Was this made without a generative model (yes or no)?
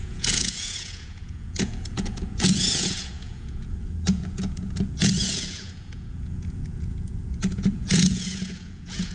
no